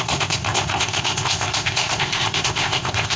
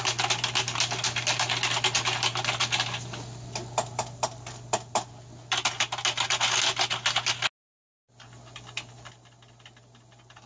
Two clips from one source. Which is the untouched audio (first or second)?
second